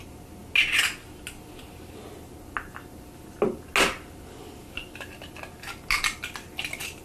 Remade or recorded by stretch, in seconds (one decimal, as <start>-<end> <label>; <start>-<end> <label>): 0.0-7.0 recorded